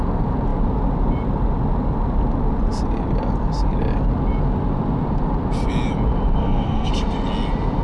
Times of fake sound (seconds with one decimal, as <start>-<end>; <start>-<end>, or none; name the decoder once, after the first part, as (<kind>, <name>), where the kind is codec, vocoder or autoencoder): 6.4-6.9 (codec, SNAC)